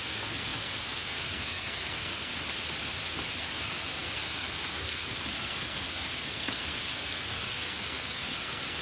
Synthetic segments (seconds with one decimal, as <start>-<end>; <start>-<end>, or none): 0.0-2.3; 3.4-8.8